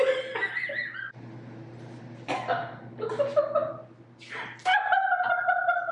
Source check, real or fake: real